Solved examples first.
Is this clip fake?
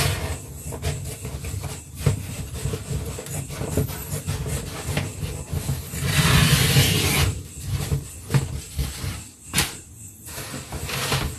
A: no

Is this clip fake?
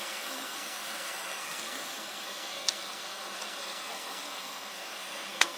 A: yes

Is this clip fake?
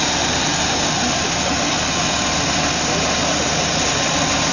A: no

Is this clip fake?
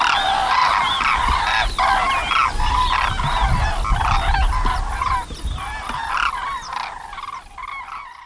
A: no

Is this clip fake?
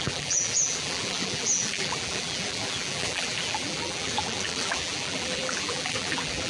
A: yes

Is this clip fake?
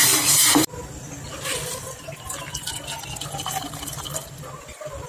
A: no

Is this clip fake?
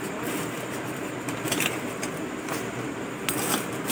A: no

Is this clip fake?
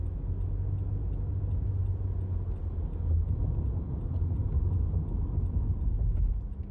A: no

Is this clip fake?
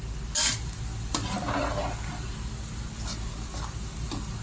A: no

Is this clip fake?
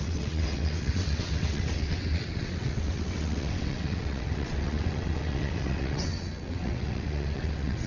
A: yes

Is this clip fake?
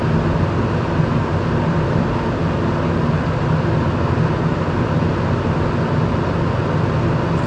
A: no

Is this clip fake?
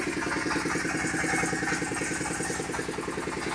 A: no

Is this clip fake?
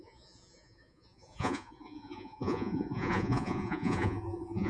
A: yes